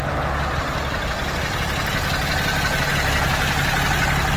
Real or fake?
real